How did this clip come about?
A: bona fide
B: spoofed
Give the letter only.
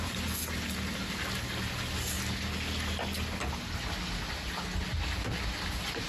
A